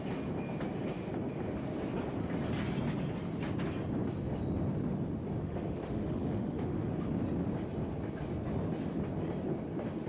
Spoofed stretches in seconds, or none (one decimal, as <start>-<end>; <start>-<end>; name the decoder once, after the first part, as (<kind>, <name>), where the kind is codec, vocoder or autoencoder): 5.4-6.9 (autoencoder, DAC-VAE)